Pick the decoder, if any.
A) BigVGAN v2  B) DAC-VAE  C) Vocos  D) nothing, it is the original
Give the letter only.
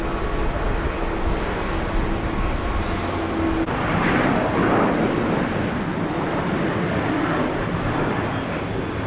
D